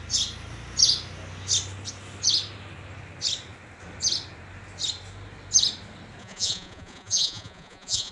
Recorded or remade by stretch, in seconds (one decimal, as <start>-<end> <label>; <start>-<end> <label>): 0.0-6.2 recorded; 6.2-8.1 remade